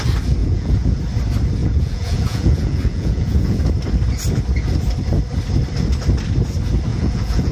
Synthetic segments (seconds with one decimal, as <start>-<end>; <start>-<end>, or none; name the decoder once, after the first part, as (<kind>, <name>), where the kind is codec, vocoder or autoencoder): 0.4-1.0 (vocoder, Vocos); 1.6-3.6; 6.9-7.5